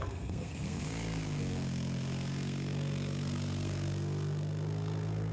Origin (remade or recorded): remade